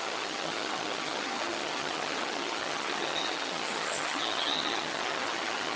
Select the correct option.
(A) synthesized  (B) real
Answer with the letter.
A